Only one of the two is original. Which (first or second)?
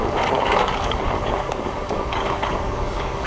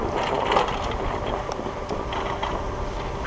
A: second